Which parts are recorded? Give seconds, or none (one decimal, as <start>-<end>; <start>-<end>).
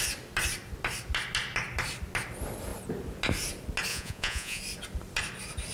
0.0-3.9; 4.6-5.7